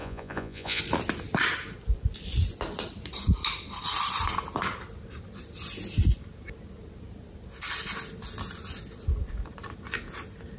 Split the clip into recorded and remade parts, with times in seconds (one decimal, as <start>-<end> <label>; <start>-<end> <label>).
0.0-0.8 remade; 0.8-10.6 recorded